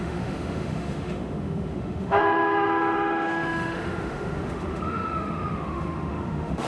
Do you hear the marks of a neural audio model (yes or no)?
yes